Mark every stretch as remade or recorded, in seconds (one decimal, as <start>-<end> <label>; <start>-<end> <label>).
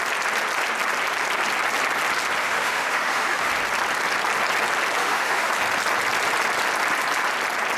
0.0-2.4 recorded; 2.4-3.5 remade; 3.5-5.0 recorded; 5.0-5.5 remade; 5.5-7.8 recorded